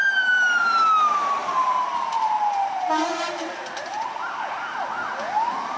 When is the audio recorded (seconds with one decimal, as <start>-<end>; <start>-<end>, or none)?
0.0-1.4; 4.3-5.8